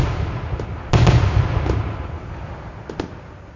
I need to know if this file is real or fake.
real